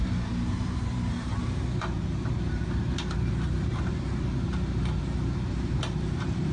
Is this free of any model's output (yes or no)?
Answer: no